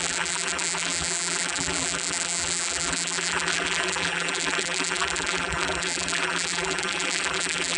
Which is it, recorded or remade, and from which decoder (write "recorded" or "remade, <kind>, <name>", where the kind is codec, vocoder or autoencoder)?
remade, vocoder, BigVGAN v2